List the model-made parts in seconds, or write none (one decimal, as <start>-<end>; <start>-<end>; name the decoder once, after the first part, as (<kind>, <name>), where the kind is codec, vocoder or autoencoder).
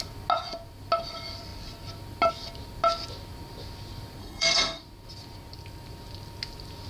4.2-4.8 (codec, SNAC)